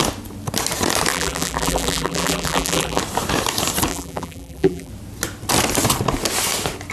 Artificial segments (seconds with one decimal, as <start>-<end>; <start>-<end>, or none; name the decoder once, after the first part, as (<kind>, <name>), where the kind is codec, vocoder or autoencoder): 1.1-3.0 (vocoder, BigVGAN v2); 3.9-4.9